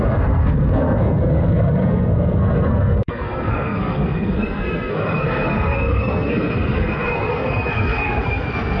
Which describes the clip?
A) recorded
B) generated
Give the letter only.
B